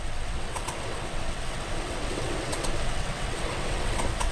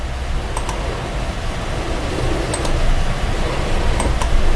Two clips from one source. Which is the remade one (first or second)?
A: first